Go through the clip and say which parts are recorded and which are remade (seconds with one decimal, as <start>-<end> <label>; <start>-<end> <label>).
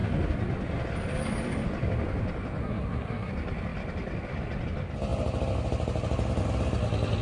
0.0-2.6 recorded; 2.6-3.3 remade; 3.3-7.2 recorded